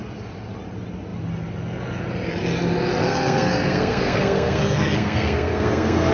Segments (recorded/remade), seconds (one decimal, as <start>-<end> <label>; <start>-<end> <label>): 0.0-3.0 recorded; 3.0-6.1 remade